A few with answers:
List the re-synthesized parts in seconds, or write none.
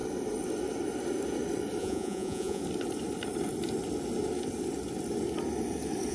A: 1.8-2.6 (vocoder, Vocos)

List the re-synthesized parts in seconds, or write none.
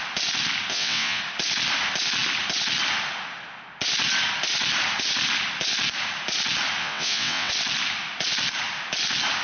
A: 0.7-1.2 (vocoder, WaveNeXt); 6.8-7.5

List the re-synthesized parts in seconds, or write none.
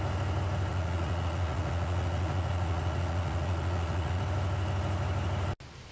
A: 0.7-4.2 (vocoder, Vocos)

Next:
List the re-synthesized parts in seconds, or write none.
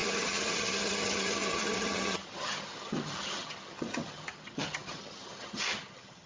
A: 0.0-6.3 (vocoder, HiFi-GAN)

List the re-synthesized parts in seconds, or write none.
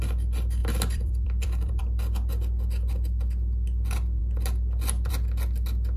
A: 0.6-1.8 (vocoder, BigVGAN v2)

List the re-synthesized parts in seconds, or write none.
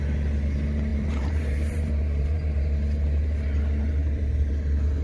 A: 0.9-2.5 (vocoder, BigVGAN v2); 4.0-4.5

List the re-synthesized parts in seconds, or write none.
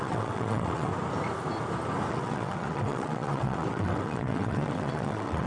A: 0.0-0.9 (vocoder, WaveNeXt); 2.1-5.5